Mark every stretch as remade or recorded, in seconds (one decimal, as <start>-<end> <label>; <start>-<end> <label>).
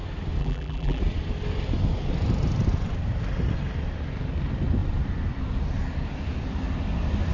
0.0-0.4 recorded; 0.4-1.0 remade; 1.0-7.3 recorded